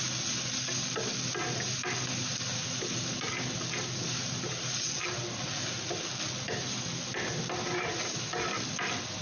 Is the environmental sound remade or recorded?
recorded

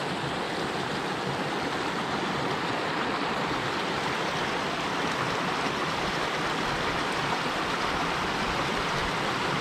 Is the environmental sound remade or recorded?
recorded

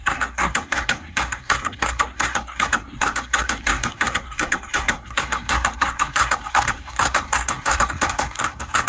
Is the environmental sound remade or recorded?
remade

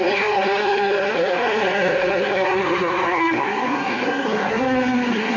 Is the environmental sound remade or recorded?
remade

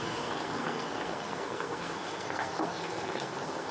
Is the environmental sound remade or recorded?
remade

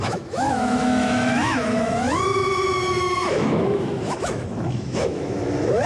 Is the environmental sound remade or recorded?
remade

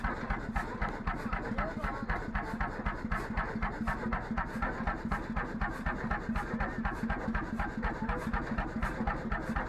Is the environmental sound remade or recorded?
recorded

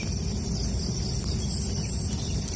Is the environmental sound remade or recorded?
recorded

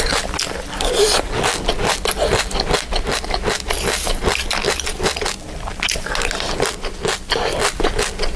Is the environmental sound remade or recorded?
recorded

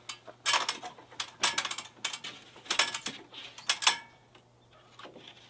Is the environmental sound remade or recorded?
recorded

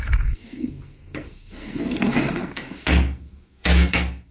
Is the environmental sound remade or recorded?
remade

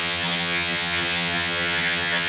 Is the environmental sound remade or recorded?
remade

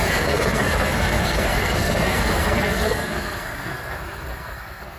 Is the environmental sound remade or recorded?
remade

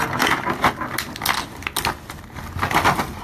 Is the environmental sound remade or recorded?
recorded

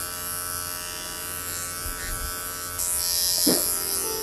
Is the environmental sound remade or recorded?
recorded